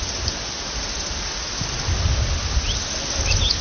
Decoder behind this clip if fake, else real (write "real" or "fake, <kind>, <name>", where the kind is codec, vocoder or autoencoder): real